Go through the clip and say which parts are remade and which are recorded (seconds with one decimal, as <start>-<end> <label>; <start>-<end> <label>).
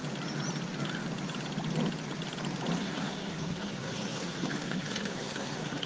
0.0-2.8 recorded; 2.8-5.9 remade